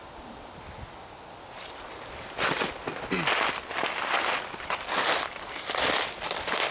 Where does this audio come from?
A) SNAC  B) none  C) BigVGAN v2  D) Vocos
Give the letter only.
B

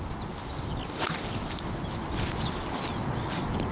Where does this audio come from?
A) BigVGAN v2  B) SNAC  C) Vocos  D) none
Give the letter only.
D